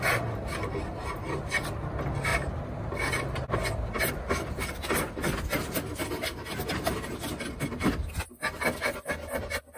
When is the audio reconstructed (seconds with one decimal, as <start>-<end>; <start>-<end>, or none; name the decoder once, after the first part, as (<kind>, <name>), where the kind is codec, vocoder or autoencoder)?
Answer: none